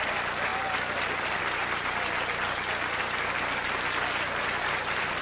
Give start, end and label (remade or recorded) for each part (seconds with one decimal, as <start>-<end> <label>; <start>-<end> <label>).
0.0-5.2 recorded